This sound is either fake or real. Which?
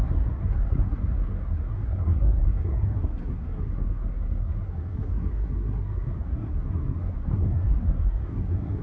fake